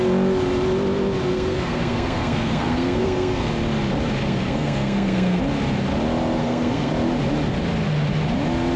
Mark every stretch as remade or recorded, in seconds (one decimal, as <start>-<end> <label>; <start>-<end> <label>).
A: 0.0-1.3 recorded; 1.3-3.5 remade; 3.5-4.2 recorded; 4.2-5.4 remade; 5.4-6.4 recorded; 6.4-6.9 remade; 6.9-8.8 recorded